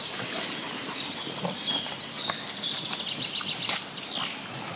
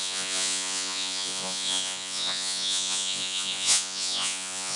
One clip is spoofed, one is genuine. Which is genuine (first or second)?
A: first